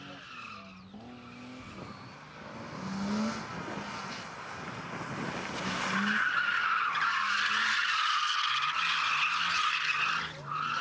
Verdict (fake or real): real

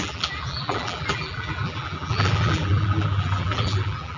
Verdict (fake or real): fake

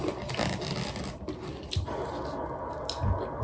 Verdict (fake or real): real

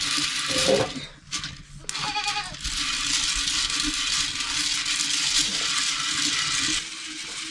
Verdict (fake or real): real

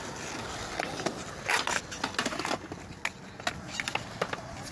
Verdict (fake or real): real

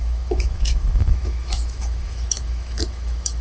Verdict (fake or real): fake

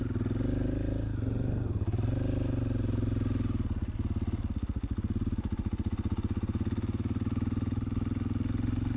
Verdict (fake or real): real